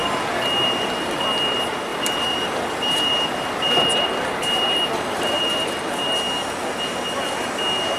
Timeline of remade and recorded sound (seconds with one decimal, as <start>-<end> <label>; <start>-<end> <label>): 0.0-0.9 remade; 0.9-1.9 recorded; 1.9-5.7 remade; 5.7-8.0 recorded